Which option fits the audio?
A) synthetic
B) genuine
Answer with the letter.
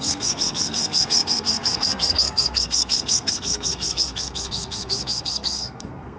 A